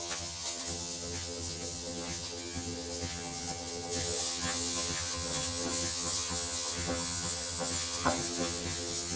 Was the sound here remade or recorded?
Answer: remade